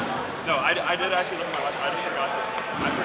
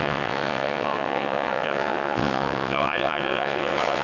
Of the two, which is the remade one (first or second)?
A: second